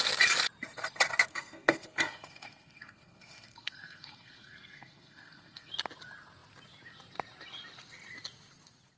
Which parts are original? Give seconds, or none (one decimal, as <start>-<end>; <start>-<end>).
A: 0.0-1.3; 5.7-9.0